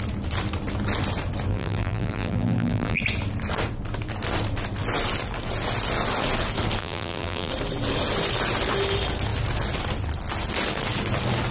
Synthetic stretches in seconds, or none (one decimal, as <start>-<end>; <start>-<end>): 1.5-3.0; 6.8-7.5